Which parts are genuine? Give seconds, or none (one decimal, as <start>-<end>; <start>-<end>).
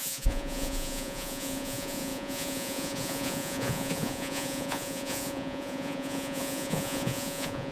none